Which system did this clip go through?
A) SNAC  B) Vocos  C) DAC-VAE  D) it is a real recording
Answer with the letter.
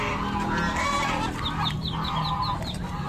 D